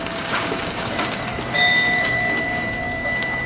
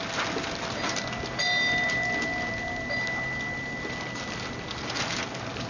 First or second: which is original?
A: second